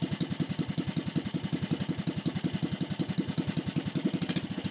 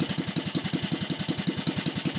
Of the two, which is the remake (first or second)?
first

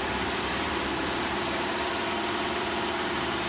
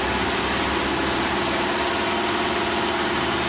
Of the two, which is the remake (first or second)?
first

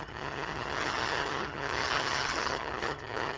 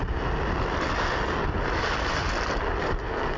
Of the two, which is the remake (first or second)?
first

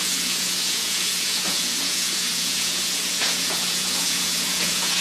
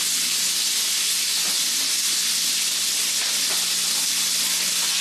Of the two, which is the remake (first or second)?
first